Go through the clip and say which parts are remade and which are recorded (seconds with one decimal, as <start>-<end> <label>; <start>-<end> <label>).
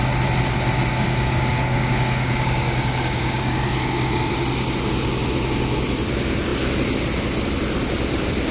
0.0-0.9 recorded; 0.9-4.3 remade; 4.3-8.5 recorded